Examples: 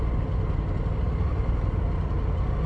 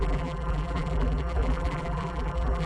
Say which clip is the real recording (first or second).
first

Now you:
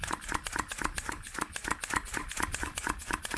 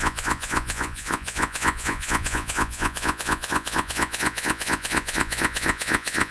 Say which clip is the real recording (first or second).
first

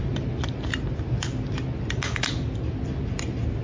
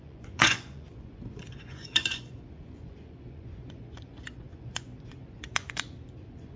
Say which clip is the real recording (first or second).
first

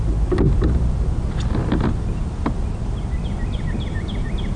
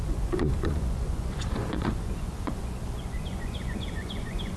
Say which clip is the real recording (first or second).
first